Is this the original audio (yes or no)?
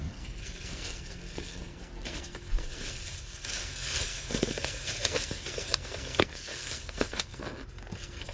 no